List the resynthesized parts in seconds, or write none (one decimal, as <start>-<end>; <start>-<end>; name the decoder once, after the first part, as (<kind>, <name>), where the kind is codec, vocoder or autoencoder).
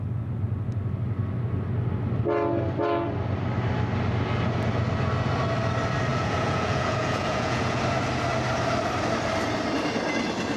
6.1-7.8 (vocoder, Vocos)